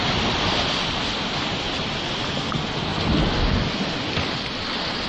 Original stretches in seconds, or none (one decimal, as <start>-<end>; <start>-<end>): 0.0-5.1

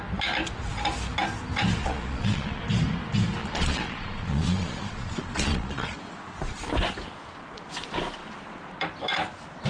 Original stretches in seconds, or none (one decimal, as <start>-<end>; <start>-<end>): 0.0-1.8; 2.6-3.4; 6.0-9.7

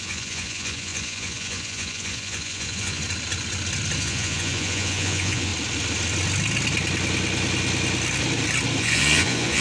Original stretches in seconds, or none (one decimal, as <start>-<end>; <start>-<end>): 3.0-4.0; 5.5-8.8

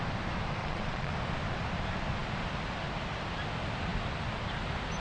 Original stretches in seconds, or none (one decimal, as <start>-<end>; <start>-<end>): 0.0-0.6; 1.1-5.0

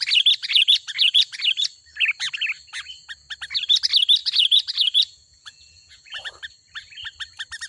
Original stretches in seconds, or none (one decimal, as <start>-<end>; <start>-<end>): 0.0-0.4; 1.4-4.2; 6.3-7.7

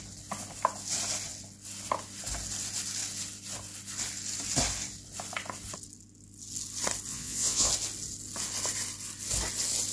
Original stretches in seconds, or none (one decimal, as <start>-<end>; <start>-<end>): 0.0-7.1; 7.7-9.9